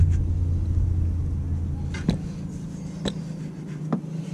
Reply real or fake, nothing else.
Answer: real